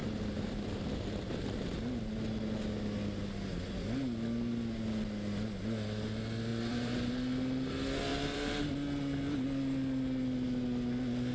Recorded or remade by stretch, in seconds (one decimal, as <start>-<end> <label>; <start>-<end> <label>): 0.0-2.1 remade; 2.1-6.5 recorded; 6.5-7.1 remade; 7.1-8.1 recorded; 8.1-8.7 remade; 8.7-11.3 recorded